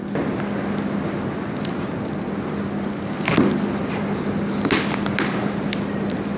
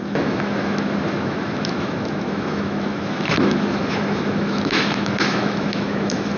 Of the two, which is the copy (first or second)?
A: second